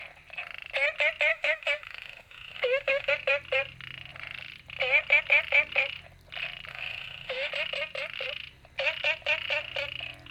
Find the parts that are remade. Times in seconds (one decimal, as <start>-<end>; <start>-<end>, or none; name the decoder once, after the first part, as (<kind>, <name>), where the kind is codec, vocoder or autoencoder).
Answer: 1.3-3.1 (autoencoder, DAC-VAE); 6.7-7.5